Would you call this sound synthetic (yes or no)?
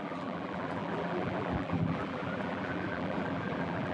yes